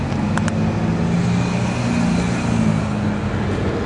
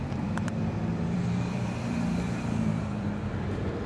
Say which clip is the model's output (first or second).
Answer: second